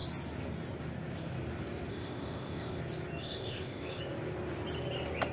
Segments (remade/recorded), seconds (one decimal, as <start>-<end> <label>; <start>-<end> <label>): 0.0-1.9 recorded; 1.9-2.8 remade; 2.8-3.2 recorded; 3.2-4.0 remade; 4.0-5.3 recorded